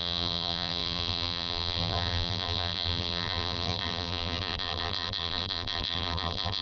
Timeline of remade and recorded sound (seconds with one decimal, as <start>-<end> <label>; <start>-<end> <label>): 0.0-6.6 remade